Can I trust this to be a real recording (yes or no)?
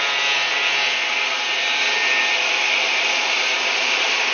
yes